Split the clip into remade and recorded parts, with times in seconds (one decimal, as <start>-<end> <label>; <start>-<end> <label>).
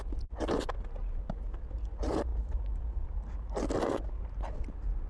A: 0.0-5.1 recorded